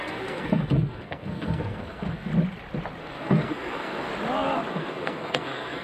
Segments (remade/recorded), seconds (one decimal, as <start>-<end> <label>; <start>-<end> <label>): 0.0-2.3 remade; 2.3-3.0 recorded; 3.0-4.1 remade; 4.1-4.7 recorded; 4.7-5.8 remade